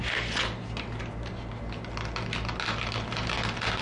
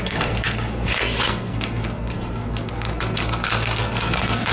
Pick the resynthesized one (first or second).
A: second